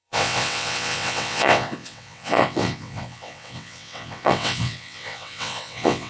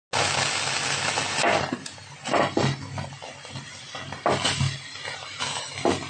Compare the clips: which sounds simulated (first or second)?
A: first